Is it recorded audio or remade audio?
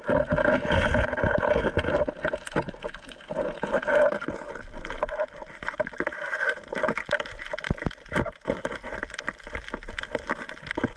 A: recorded